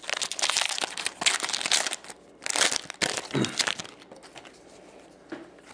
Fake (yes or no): no